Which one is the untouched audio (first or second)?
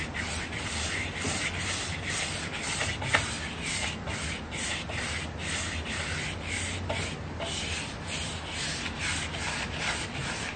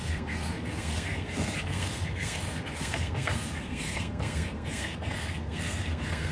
first